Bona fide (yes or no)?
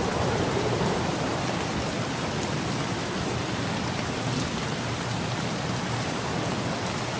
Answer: yes